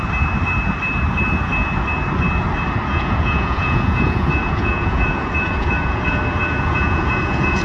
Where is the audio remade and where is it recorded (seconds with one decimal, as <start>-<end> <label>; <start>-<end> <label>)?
0.0-2.9 recorded; 2.9-7.6 remade